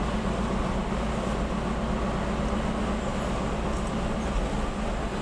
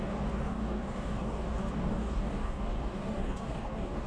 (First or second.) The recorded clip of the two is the first